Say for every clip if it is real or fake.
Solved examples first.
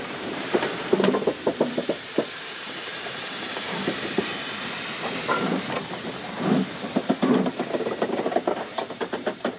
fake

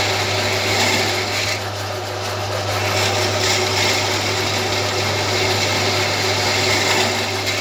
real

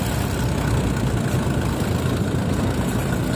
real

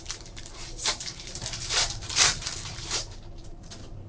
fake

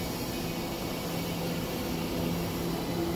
real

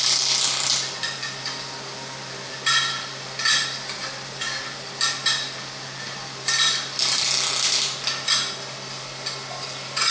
fake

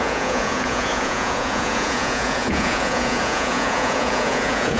fake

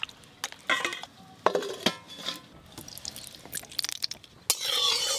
real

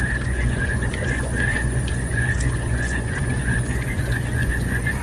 fake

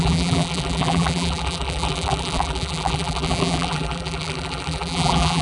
fake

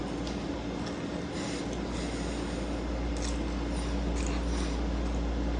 real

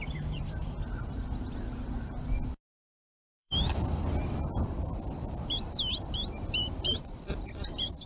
fake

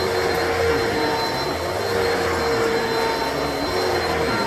real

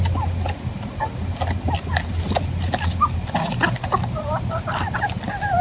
real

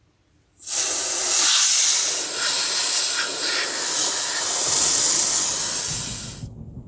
real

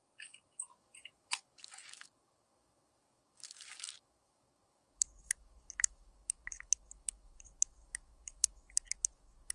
fake